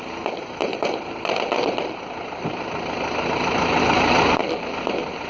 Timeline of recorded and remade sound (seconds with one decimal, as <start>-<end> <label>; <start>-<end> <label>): 0.0-0.6 recorded; 0.6-3.8 remade; 3.8-5.3 recorded